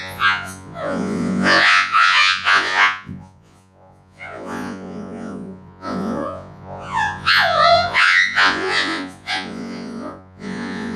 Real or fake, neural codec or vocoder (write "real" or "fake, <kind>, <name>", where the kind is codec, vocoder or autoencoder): fake, vocoder, Vocos